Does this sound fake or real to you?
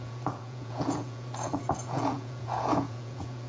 fake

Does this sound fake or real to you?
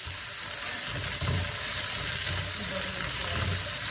real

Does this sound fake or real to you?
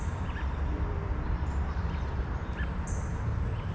fake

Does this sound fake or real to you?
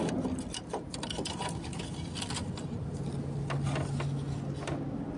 real